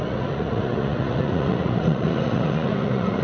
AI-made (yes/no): yes